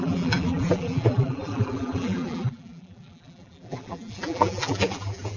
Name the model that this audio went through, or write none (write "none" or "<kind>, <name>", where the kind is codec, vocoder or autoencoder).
vocoder, BigVGAN v2